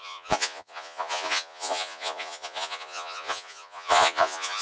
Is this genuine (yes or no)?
no